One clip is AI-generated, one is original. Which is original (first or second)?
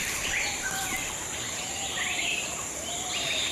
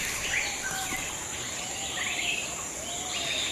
second